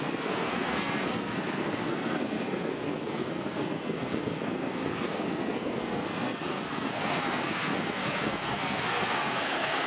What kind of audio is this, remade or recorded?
remade